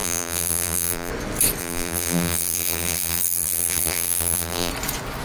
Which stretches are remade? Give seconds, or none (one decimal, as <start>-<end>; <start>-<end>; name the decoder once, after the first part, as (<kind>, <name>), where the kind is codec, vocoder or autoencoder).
0.0-1.1 (vocoder, BigVGAN v2); 1.6-4.7